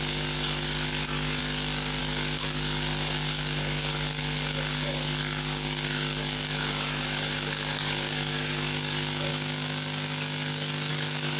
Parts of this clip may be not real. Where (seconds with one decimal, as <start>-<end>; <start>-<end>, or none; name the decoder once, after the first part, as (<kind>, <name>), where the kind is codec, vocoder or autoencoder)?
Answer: 0.0-1.4 (codec, DAC); 2.0-9.3; 10.9-11.4